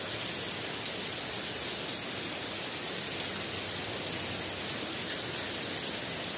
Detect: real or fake real